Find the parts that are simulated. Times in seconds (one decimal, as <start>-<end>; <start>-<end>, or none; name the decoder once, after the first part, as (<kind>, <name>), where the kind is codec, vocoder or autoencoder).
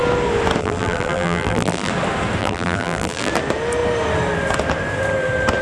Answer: 0.6-1.9 (vocoder, BigVGAN v2); 2.4-3.3